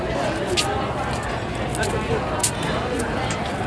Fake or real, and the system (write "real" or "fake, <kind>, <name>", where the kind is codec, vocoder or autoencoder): real